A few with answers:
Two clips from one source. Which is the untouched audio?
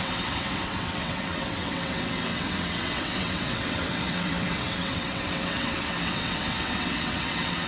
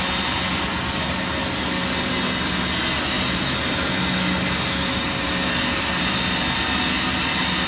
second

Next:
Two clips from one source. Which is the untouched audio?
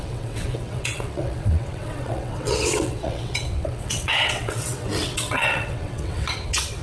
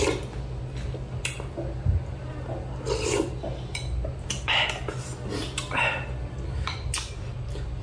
second